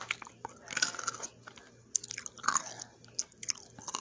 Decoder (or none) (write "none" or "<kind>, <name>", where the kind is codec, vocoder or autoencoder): none